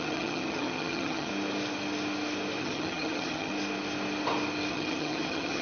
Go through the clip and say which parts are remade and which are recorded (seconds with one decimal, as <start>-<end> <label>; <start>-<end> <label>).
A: 0.0-1.3 remade; 1.3-2.6 recorded; 2.6-3.5 remade; 3.5-4.7 recorded; 4.7-5.6 remade